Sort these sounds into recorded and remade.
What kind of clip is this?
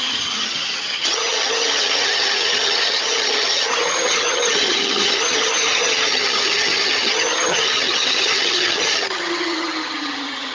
remade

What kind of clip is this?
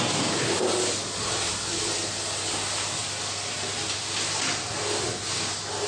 recorded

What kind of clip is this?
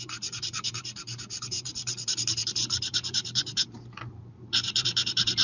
remade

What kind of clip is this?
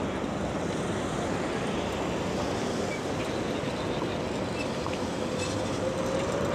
recorded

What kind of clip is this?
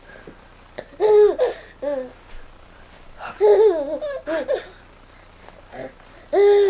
recorded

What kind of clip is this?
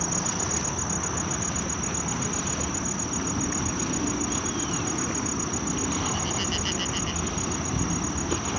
recorded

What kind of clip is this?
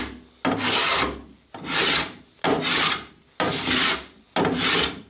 recorded